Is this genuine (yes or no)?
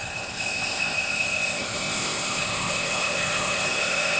no